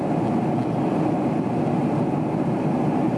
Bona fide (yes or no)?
yes